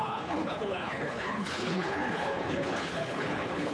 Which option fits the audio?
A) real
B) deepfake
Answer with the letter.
B